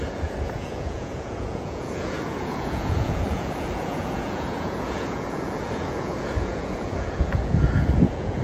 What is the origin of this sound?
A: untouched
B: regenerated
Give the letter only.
B